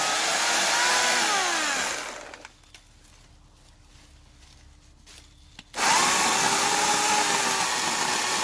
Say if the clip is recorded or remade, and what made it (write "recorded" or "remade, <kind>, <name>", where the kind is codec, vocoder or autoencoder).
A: recorded